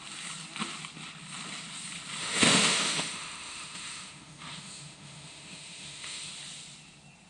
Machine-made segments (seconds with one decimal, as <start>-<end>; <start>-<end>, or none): 2.2-6.3